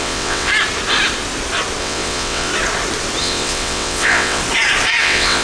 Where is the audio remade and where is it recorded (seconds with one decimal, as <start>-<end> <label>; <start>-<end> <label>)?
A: 0.0-0.5 remade; 0.5-1.8 recorded; 1.8-2.5 remade; 2.5-3.2 recorded; 3.2-4.4 remade; 4.4-5.0 recorded; 5.0-5.4 remade